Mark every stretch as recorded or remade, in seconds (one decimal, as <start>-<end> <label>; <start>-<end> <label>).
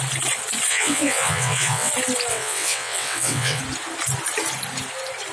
0.0-0.7 recorded; 0.7-1.9 remade; 1.9-2.3 recorded; 2.3-3.6 remade; 3.6-5.3 recorded